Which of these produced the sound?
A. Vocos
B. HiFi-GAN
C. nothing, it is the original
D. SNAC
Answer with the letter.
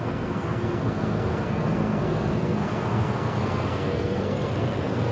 D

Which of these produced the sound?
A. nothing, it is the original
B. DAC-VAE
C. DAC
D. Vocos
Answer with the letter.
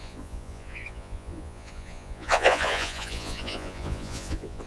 D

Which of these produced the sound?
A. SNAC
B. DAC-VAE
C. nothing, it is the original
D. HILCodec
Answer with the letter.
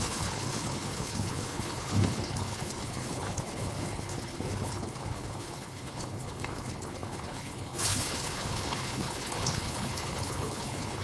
D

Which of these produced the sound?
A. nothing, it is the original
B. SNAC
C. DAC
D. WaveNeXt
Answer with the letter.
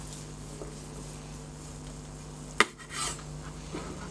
A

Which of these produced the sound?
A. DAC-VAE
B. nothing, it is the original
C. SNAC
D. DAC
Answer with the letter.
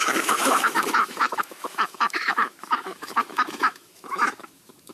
A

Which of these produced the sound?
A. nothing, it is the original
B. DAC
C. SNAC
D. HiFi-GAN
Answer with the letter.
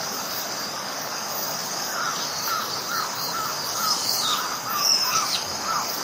B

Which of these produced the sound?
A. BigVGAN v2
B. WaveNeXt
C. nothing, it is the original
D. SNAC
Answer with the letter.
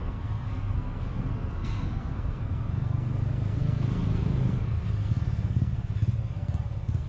D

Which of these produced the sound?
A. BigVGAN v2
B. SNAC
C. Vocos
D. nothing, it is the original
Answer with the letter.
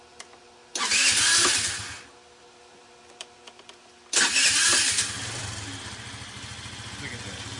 D